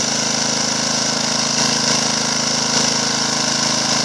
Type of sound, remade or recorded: recorded